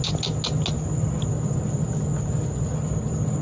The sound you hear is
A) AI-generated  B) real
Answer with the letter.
B